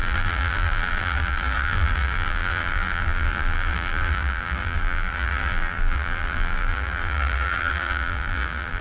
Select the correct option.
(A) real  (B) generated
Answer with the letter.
B